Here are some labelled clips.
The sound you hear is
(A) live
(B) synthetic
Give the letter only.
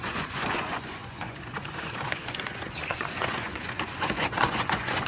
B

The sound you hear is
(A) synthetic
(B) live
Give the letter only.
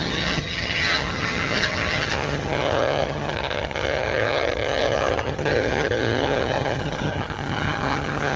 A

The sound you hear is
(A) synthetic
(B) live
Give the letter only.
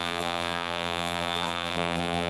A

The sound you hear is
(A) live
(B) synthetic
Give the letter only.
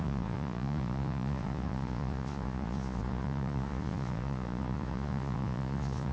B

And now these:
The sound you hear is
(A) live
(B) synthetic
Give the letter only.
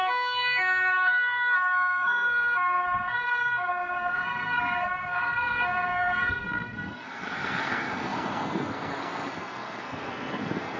B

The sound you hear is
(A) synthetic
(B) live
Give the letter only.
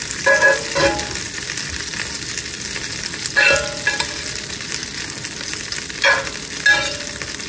B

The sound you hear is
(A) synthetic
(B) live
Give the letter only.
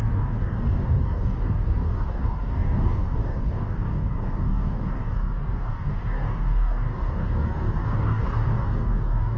A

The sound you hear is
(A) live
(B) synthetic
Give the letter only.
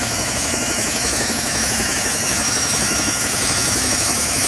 B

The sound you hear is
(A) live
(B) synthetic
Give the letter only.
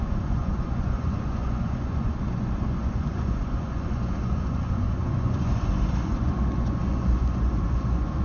B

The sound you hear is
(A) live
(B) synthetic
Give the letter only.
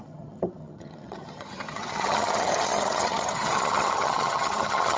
B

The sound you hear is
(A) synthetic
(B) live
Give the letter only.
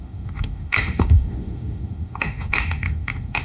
A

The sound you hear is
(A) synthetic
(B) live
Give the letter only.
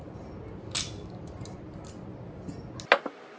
B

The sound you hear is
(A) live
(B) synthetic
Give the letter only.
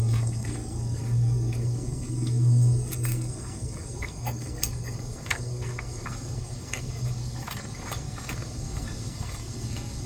B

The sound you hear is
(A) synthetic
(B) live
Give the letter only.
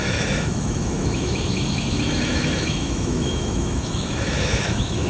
A